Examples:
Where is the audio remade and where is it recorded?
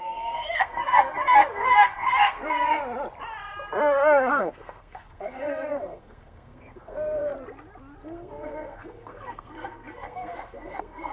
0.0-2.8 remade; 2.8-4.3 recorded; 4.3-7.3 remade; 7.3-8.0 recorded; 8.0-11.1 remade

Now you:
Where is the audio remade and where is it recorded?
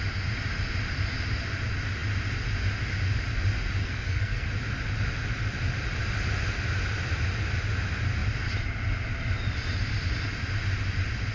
0.0-3.8 recorded; 3.8-4.5 remade; 4.5-11.3 recorded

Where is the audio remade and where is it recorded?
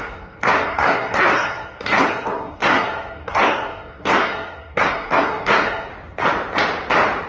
0.0-5.9 remade; 5.9-7.3 recorded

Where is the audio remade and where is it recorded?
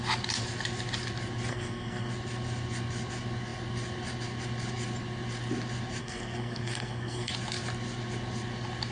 0.0-1.5 recorded; 1.5-2.1 remade; 2.1-6.0 recorded; 6.0-7.3 remade; 7.3-8.9 recorded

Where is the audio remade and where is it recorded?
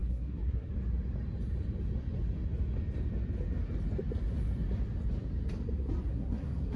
0.0-0.7 remade; 0.7-6.1 recorded; 6.1-6.8 remade